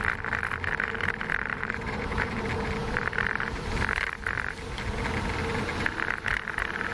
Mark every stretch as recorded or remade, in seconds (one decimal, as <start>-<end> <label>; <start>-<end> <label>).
0.0-1.5 recorded; 1.5-2.4 remade; 2.4-6.9 recorded